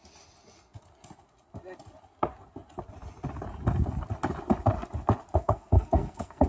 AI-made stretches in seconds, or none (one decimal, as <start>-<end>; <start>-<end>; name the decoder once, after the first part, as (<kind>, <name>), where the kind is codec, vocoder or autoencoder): 5.4-6.5 (codec, SNAC)